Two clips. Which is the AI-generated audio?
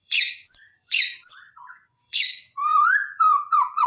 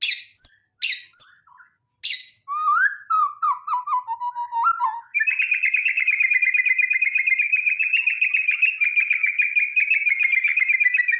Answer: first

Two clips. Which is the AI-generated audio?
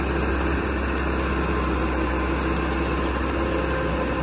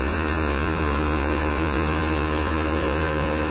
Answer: second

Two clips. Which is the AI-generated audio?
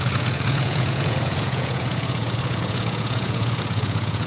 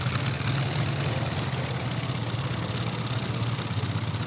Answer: first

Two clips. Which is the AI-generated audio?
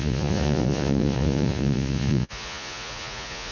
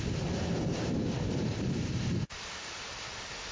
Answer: first